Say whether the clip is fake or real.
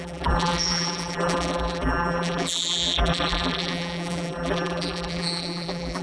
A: fake